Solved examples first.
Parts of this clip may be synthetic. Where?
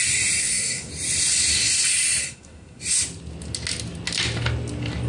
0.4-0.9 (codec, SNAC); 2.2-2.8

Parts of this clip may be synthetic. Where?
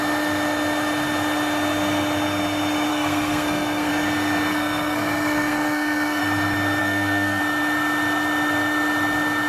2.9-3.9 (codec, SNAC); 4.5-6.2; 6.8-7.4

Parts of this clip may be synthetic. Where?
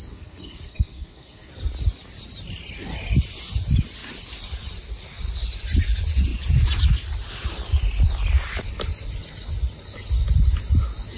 0.0-1.5 (codec, SNAC)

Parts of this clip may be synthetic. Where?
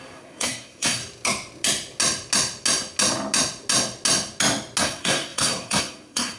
0.0-1.0 (codec, SNAC); 4.8-6.4